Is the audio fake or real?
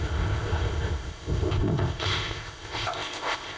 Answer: fake